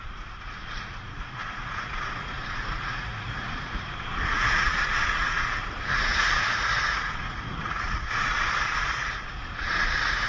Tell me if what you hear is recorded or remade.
remade